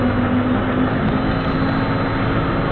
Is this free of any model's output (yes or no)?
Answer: yes